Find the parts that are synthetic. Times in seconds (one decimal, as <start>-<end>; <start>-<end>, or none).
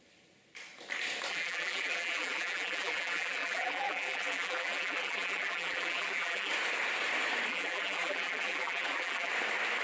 1.3-6.5; 7.5-9.3